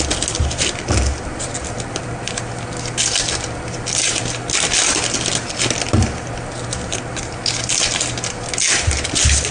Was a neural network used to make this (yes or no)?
no